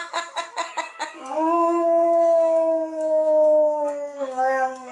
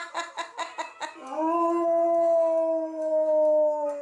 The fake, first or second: first